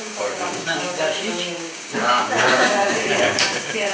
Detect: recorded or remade remade